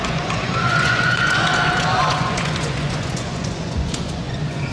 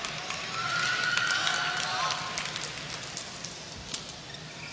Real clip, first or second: second